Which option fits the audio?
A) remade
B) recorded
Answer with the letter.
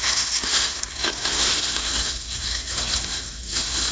A